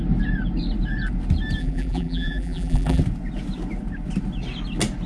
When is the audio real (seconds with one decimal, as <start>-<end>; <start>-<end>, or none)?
0.0-1.6; 3.0-5.1